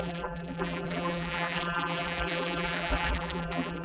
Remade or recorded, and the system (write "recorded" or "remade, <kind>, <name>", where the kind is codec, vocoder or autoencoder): remade, vocoder, BigVGAN v2